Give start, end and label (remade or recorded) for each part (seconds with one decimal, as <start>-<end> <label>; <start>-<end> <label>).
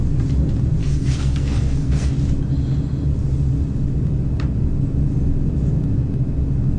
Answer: 0.0-0.8 recorded; 0.8-2.1 remade; 2.1-6.8 recorded